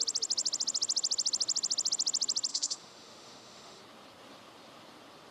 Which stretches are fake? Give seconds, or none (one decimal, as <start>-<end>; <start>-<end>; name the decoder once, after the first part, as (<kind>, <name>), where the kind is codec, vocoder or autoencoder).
2.5-3.8 (autoencoder, DAC-VAE)